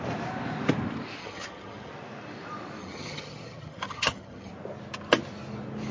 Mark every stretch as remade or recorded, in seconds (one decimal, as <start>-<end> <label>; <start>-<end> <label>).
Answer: 0.0-1.2 recorded; 1.2-1.9 remade; 1.9-2.8 recorded; 2.8-4.5 remade; 4.5-5.9 recorded